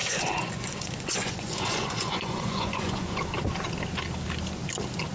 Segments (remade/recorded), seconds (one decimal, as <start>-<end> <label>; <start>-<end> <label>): 0.0-3.2 remade; 3.2-5.1 recorded